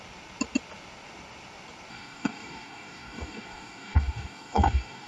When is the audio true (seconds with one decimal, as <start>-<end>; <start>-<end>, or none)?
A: 0.0-1.9